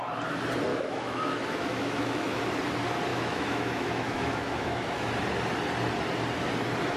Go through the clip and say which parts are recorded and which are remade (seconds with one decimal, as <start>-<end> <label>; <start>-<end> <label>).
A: 0.0-0.7 recorded; 0.7-2.4 remade; 2.4-3.1 recorded; 3.1-5.1 remade; 5.1-7.0 recorded

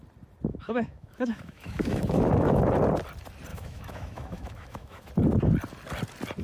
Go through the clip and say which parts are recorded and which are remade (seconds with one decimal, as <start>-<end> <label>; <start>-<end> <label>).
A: 0.0-0.5 recorded; 0.5-2.7 remade; 2.7-3.5 recorded; 3.5-5.1 remade; 5.1-6.4 recorded

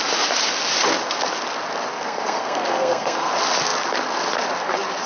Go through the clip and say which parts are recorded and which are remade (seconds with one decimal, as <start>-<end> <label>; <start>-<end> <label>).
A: 0.0-1.9 recorded; 1.9-3.3 remade; 3.3-5.1 recorded

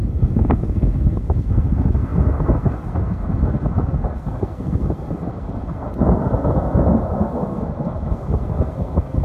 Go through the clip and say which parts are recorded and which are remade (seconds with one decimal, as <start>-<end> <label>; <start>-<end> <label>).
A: 0.0-9.2 remade

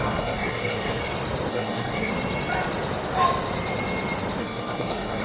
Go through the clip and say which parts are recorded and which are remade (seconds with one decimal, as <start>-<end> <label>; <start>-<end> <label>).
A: 0.0-1.0 remade; 1.0-1.5 recorded; 1.5-2.1 remade; 2.1-4.4 recorded; 4.4-5.2 remade

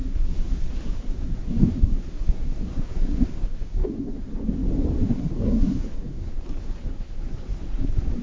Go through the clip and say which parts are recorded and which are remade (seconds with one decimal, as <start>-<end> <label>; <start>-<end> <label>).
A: 0.0-4.5 remade; 4.5-4.9 recorded; 4.9-8.2 remade

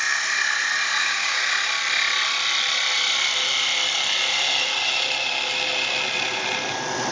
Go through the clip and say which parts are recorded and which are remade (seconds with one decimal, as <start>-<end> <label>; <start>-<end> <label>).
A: 0.0-1.0 recorded; 1.0-1.5 remade; 1.5-7.1 recorded

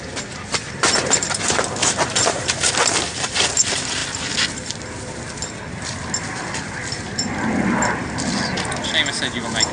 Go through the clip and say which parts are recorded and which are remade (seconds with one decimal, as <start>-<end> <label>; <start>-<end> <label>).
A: 0.0-1.8 recorded; 1.8-2.7 remade; 2.7-9.7 recorded